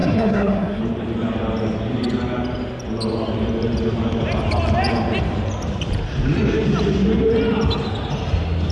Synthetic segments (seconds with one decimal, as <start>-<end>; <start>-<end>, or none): 0.0-0.8